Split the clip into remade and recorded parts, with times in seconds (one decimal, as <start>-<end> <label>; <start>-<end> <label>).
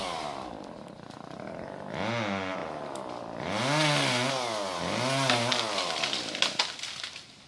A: 0.0-7.5 recorded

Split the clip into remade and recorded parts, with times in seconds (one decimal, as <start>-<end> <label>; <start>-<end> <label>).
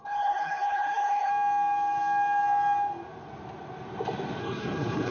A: 0.0-1.3 remade; 1.3-4.4 recorded; 4.4-5.1 remade